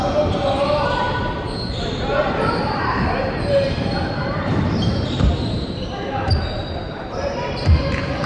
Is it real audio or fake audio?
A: fake